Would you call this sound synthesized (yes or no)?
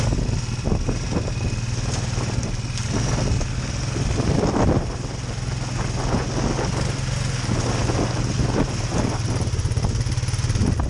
no